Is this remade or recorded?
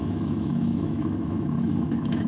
remade